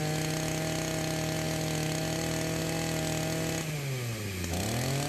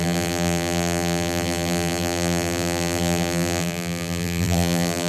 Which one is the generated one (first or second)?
second